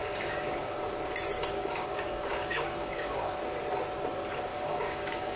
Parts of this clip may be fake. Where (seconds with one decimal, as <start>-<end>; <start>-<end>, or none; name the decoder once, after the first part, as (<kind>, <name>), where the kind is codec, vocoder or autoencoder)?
0.0-0.9 (codec, DAC); 1.5-3.3; 4.5-5.4